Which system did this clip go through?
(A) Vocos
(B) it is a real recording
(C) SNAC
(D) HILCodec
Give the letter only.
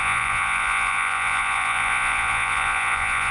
A